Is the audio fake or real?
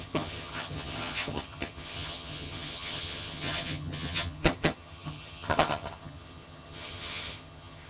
fake